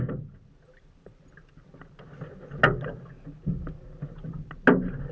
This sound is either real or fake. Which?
real